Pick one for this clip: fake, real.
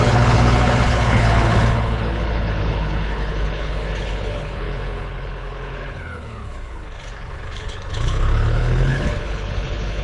fake